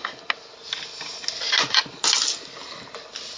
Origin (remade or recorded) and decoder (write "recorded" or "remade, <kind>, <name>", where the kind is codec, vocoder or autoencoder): recorded